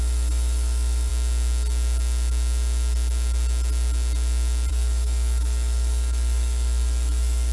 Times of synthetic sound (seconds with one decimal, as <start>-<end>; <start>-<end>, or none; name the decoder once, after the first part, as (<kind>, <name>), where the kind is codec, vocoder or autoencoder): 0.0-1.1 (autoencoder, DAC-VAE); 4.7-7.5